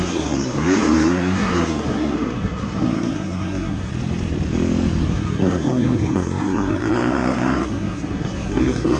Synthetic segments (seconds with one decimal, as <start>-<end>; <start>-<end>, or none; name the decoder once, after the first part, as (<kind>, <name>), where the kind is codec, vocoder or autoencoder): 0.0-3.9 (codec, SNAC); 5.0-9.0